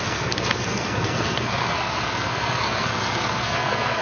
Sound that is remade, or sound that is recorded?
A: remade